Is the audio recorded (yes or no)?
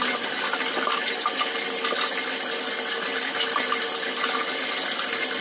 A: yes